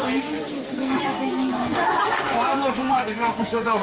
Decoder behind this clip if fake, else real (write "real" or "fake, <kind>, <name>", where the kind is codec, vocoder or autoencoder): fake, codec, SNAC